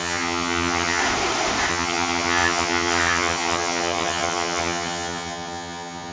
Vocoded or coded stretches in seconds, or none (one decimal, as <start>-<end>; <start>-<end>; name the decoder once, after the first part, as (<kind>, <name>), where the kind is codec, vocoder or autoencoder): 0.0-1.0 (vocoder, HiFi-GAN); 1.7-6.1